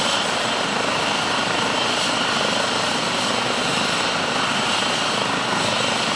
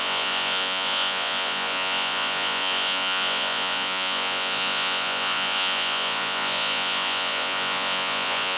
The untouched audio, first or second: first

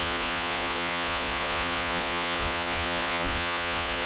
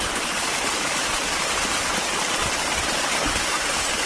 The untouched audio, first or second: second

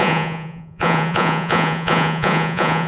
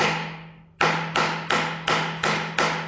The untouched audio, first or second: second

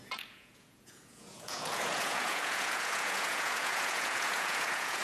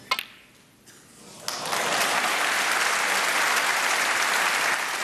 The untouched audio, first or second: second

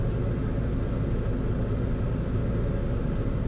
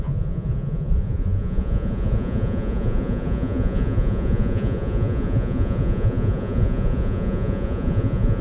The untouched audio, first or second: first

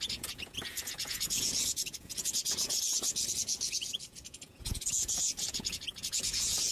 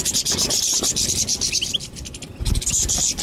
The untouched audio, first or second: second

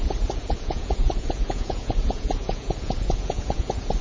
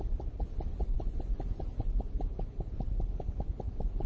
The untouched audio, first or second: second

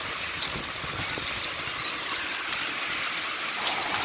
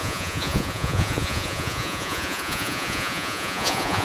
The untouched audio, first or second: first